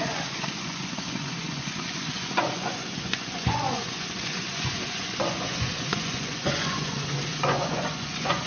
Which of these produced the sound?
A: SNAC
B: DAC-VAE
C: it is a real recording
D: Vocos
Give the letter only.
D